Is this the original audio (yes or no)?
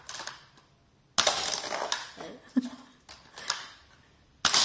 yes